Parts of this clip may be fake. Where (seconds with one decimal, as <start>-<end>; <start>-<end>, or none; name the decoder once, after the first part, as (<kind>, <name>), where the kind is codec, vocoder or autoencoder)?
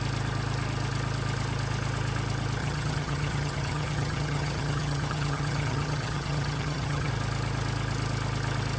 2.6-7.1 (vocoder, HiFi-GAN)